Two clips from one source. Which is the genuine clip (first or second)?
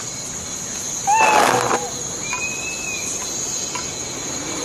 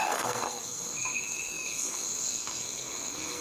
first